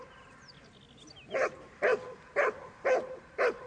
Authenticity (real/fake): real